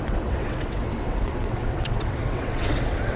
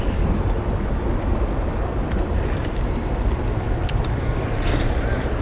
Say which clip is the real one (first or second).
second